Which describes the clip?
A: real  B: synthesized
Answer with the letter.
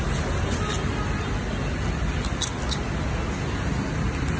A